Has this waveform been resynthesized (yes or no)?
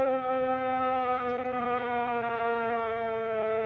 yes